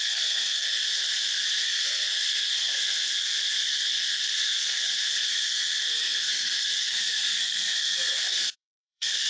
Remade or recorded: remade